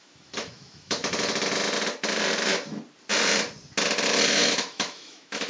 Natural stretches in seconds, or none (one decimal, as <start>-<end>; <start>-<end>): 1.0-4.3